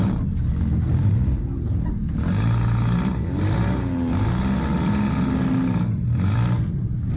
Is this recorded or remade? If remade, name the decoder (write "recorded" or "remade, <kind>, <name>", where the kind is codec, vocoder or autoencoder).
recorded